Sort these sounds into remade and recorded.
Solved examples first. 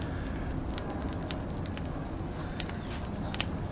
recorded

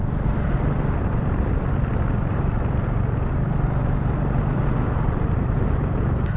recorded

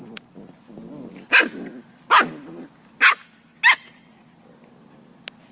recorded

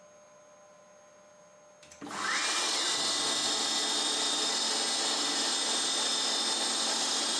recorded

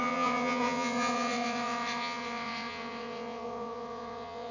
remade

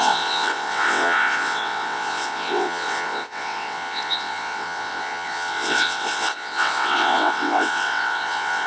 remade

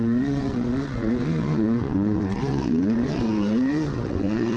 remade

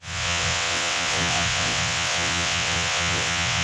remade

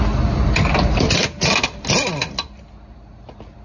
recorded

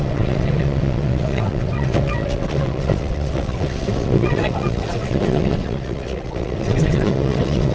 remade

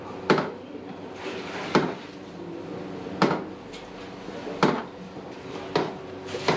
recorded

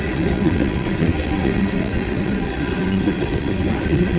remade